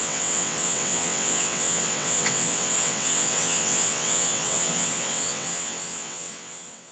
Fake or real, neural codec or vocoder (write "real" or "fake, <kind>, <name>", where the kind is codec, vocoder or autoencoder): fake, vocoder, WaveNeXt